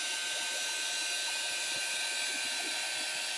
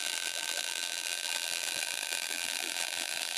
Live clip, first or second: first